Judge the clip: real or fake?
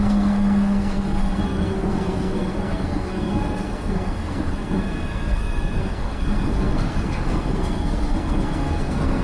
fake